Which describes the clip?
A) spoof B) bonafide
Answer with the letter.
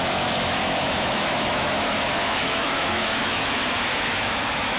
A